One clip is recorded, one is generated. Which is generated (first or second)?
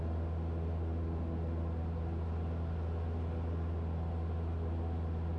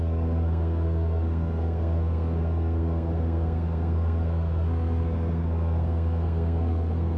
second